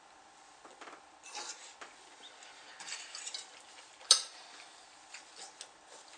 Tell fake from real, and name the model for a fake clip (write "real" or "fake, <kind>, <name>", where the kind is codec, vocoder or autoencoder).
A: real